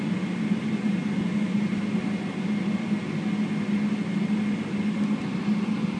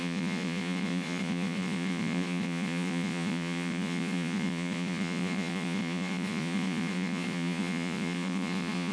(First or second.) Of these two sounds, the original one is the first